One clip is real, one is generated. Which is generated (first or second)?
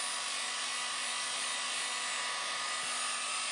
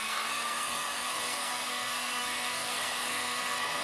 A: second